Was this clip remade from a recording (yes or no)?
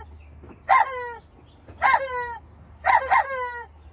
no